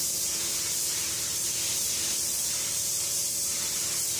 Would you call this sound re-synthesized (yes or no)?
yes